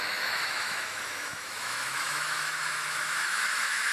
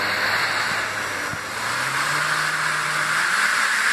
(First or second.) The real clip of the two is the second